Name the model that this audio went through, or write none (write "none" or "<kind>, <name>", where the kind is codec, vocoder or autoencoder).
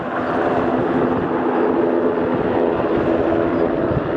none